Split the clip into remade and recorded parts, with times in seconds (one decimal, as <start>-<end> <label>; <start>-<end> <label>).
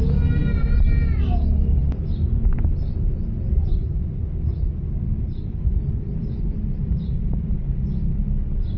0.0-8.8 recorded